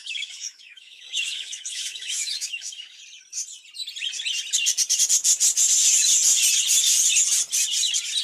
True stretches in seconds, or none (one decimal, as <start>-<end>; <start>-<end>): 3.0-8.2